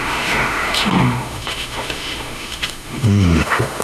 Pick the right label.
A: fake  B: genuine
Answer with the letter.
A